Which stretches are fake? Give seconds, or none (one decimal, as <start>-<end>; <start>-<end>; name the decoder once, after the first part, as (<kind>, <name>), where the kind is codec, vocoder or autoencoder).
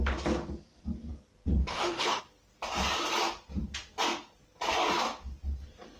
1.6-2.2 (autoencoder, DAC-VAE)